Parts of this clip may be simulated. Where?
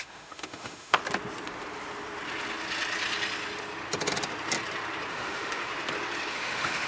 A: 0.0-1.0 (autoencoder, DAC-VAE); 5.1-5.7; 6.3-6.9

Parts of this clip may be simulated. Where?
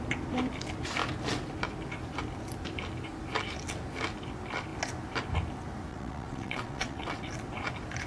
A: 5.9-7.3 (vocoder, WaveNeXt)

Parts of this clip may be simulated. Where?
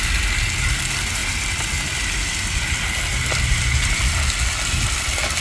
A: 1.2-3.9 (vocoder, BigVGAN v2)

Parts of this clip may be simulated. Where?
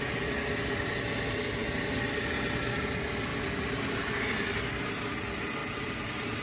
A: none